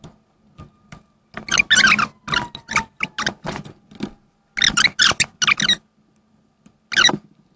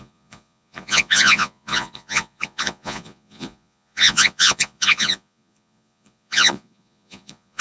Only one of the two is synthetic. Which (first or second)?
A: second